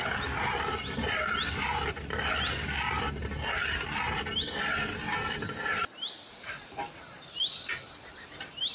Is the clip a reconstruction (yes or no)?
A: no